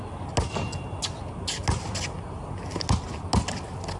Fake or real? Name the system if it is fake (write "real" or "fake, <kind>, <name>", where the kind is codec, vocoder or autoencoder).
real